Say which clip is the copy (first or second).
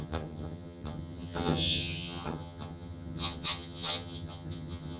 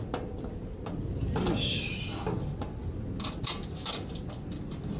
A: first